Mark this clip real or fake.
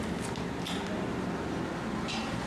real